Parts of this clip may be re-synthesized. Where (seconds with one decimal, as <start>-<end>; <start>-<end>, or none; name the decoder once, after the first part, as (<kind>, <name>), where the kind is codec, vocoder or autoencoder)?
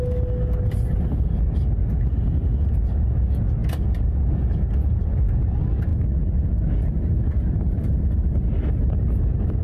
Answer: none